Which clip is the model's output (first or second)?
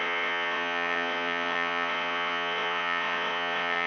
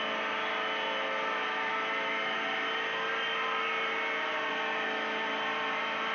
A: first